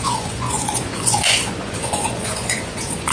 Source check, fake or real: fake